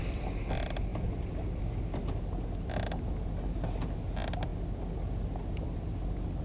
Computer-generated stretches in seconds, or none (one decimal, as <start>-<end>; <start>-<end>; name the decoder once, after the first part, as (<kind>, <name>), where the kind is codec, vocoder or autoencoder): none